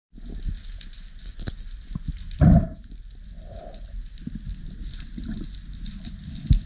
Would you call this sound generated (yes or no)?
no